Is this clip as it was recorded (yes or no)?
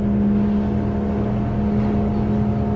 yes